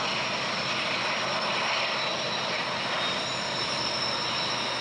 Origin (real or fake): real